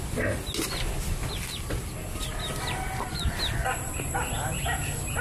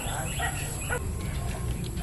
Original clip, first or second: first